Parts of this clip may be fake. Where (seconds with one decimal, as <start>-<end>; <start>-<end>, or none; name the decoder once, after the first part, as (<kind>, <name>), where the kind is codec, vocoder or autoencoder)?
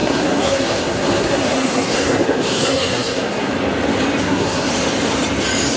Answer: 0.0-3.5 (codec, SNAC); 4.2-4.7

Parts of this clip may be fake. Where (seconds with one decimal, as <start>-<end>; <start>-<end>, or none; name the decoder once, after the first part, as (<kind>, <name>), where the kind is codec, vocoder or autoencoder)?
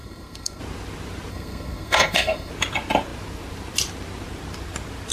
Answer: 0.0-0.6 (codec, SNAC); 1.3-2.5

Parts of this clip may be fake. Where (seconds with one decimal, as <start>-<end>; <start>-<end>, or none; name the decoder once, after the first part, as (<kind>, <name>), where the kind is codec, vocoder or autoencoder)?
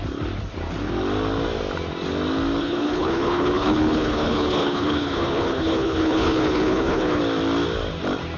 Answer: 2.6-7.2 (codec, HILCodec)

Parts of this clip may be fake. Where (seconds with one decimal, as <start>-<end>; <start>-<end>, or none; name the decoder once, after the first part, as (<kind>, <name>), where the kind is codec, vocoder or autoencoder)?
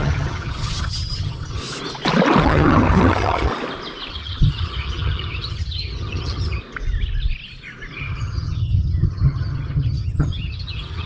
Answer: 0.0-1.6 (vocoder, HiFi-GAN); 2.4-3.5; 4.1-6.6; 8.0-11.1